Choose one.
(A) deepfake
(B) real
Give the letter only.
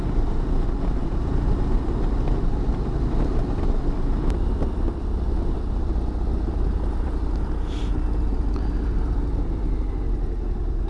B